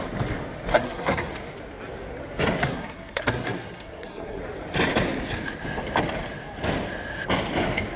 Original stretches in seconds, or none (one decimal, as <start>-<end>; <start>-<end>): 0.0-0.7; 1.3-2.6; 4.4-8.0